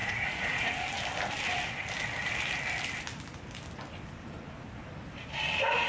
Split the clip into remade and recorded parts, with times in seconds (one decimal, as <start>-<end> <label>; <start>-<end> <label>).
0.0-0.7 remade; 0.7-5.9 recorded